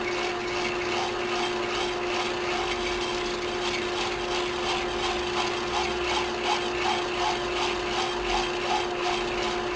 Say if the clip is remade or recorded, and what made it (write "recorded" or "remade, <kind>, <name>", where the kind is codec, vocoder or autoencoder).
recorded